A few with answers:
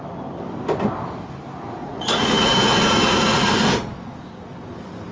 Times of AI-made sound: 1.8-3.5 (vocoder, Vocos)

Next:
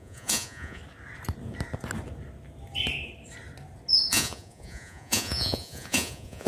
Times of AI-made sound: 0.0-0.8 (vocoder, Vocos); 4.1-6.5